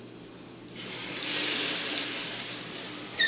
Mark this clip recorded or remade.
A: recorded